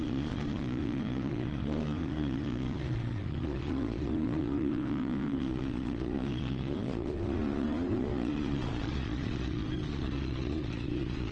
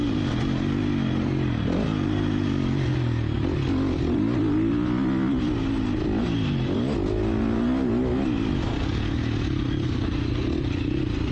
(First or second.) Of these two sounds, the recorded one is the second